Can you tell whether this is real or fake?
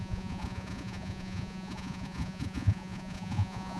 fake